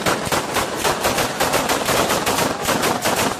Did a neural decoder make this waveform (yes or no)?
no